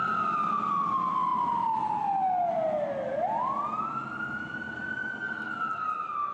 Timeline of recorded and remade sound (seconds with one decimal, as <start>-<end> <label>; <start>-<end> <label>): 0.0-6.3 recorded